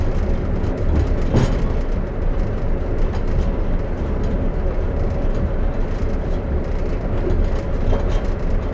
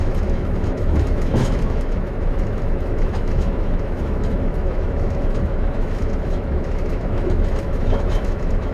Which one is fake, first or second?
second